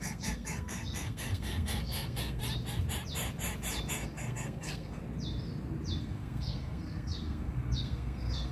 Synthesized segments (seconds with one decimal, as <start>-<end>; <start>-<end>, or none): 0.0-2.4; 3.9-5.0; 6.0-8.5